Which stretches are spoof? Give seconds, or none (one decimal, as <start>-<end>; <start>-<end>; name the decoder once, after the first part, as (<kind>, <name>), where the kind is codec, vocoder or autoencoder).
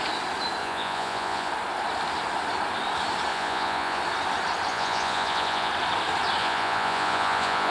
0.6-1.5 (vocoder, Vocos); 3.3-4.0; 4.7-5.7; 6.4-7.7